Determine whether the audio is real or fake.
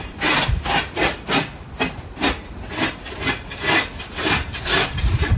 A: real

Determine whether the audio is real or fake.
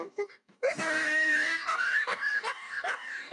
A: fake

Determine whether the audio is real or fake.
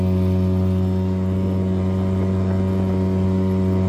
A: real